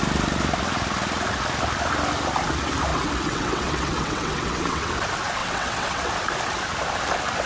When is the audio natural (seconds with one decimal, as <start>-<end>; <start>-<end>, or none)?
0.0-2.9; 4.9-5.4; 6.1-7.5